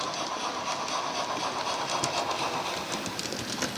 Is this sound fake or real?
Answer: real